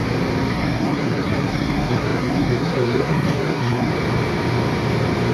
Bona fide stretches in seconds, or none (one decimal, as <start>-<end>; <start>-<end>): 0.0-0.5; 3.9-5.3